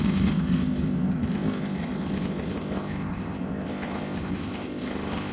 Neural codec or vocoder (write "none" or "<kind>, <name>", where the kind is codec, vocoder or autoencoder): codec, ZipCodec